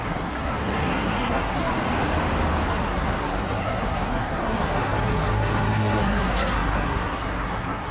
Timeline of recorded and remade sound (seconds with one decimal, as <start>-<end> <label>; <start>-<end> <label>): 0.0-1.7 remade; 1.7-2.7 recorded; 2.7-7.9 remade